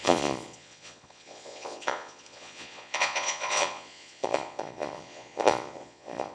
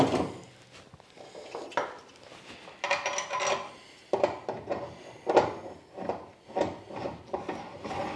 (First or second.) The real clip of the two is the second